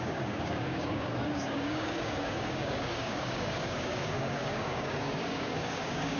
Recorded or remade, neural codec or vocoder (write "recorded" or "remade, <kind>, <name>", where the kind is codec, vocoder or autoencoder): remade, codec, DAC